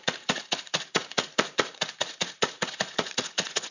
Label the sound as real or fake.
fake